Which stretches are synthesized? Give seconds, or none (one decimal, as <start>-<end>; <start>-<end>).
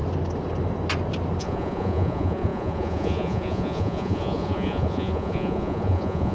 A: 1.4-6.3